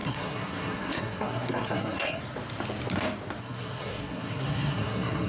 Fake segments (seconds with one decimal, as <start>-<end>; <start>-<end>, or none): 0.0-2.2; 3.4-5.3